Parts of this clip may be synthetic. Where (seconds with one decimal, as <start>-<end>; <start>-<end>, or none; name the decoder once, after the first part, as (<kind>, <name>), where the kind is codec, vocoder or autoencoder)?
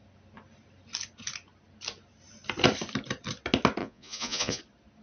3.8-4.6 (vocoder, Vocos)